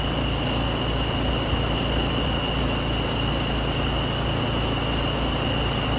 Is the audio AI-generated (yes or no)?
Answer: no